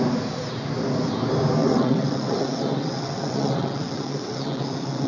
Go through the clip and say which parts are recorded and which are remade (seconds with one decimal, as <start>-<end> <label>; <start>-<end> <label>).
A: 0.0-1.6 recorded; 1.6-5.1 remade